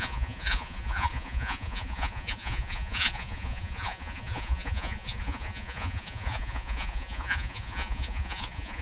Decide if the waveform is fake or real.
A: fake